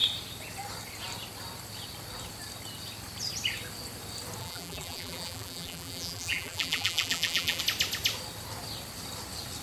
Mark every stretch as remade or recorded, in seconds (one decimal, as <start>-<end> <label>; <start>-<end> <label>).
0.0-4.4 recorded; 4.4-7.6 remade; 7.6-9.6 recorded